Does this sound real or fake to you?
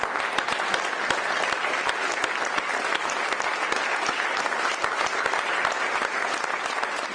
real